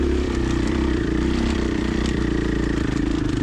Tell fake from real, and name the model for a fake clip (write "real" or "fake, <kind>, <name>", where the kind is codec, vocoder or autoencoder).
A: fake, vocoder, BigVGAN v2